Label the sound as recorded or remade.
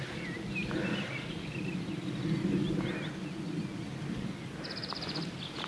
recorded